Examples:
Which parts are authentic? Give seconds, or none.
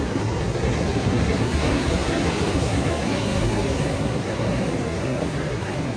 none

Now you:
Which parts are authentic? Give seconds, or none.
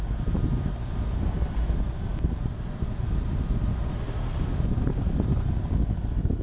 0.0-6.4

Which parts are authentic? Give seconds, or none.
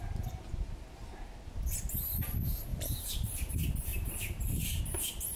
0.0-2.7; 3.5-3.9; 4.8-5.4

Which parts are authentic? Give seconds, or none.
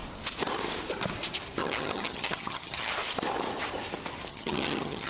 0.0-1.6; 2.9-4.3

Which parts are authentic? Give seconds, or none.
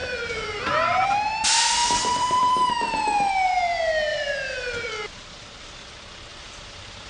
0.6-1.8; 2.7-4.1; 4.9-6.3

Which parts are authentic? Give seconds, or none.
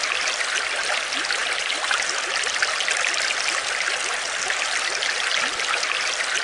0.0-6.4